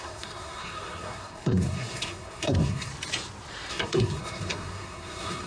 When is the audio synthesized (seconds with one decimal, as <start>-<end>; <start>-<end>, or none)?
0.0-2.9; 3.7-5.5